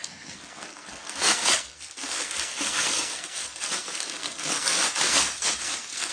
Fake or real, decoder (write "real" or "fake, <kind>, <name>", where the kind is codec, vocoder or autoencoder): fake, codec, SNAC